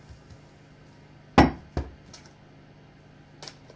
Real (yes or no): yes